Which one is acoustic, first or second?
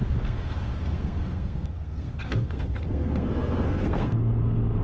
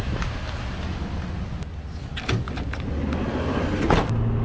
second